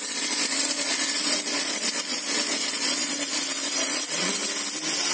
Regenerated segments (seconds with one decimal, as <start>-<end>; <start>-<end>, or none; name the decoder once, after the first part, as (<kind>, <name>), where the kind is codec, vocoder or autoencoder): 0.0-4.4 (vocoder, Vocos)

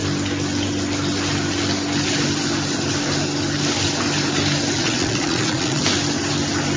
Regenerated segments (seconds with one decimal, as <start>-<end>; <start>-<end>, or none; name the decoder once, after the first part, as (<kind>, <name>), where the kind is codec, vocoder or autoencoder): 4.8-5.8 (vocoder, Vocos)

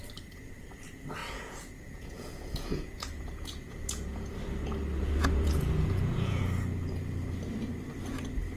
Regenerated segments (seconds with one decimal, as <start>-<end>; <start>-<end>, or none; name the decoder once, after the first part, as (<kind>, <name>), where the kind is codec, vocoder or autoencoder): 1.2-4.3 (vocoder, Vocos); 5.0-6.4

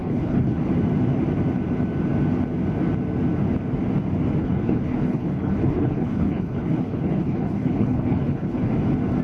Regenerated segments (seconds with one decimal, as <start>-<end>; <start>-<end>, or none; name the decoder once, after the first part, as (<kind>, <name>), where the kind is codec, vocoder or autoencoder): 0.0-0.6 (codec, HILCodec); 4.4-8.7

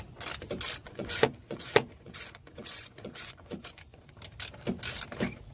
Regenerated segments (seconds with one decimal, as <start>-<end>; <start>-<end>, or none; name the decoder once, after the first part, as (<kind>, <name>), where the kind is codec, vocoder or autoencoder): 0.8-4.1 (vocoder, Vocos)